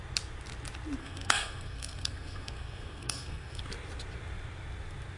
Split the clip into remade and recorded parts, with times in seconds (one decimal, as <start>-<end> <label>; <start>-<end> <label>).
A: 0.0-1.0 recorded; 1.0-3.6 remade; 3.6-5.2 recorded